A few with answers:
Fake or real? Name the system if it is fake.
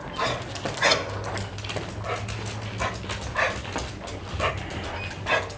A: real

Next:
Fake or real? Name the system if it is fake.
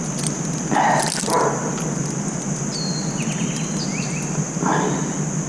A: real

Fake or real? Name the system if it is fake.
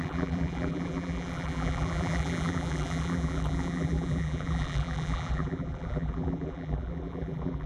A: fake, vocoder, BigVGAN v2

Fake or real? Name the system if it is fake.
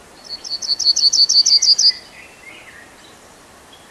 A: real